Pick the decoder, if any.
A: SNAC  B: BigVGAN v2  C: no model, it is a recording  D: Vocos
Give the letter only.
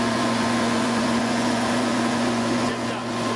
D